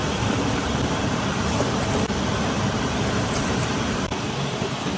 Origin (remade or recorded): remade